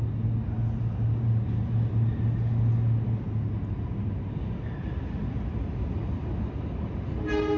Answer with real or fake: real